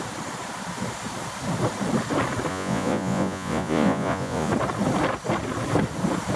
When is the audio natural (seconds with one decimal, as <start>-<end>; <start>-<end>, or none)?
0.0-2.5; 4.5-6.4